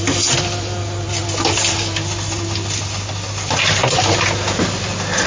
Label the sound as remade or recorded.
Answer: recorded